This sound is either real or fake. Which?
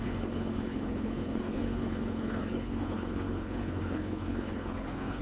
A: fake